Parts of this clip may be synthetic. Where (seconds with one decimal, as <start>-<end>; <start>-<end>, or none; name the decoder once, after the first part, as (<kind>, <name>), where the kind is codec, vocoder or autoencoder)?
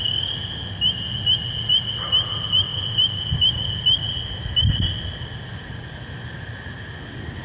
none